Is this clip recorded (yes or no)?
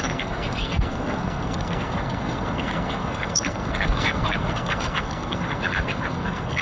no